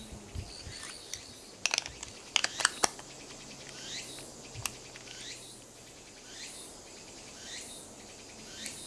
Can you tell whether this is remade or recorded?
recorded